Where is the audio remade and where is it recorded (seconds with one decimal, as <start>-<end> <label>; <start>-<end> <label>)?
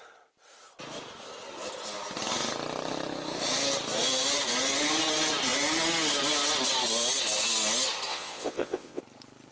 0.0-8.1 recorded; 8.1-9.0 remade; 9.0-9.5 recorded